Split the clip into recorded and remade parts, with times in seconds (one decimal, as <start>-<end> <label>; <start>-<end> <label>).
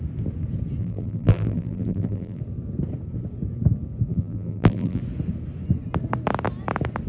0.0-0.8 recorded; 0.8-2.4 remade; 2.4-4.1 recorded; 4.1-5.0 remade; 5.0-7.1 recorded